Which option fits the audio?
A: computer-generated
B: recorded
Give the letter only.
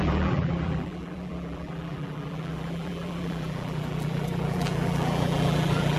A